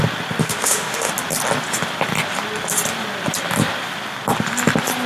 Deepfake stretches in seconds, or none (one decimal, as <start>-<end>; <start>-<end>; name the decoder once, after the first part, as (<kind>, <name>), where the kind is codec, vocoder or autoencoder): 0.4-1.1 (autoencoder, DAC-VAE)